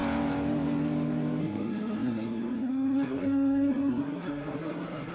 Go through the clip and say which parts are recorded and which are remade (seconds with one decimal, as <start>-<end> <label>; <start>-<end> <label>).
0.0-1.4 recorded; 1.4-5.1 remade